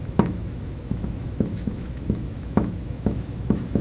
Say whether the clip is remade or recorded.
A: remade